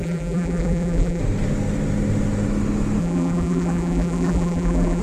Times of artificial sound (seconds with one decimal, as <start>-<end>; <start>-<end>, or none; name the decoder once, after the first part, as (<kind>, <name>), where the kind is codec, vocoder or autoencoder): 0.0-1.2 (vocoder, BigVGAN v2); 3.0-5.0